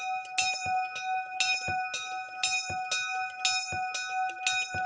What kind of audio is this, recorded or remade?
recorded